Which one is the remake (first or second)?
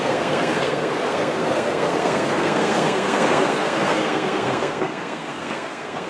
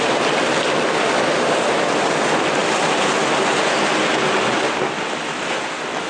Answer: first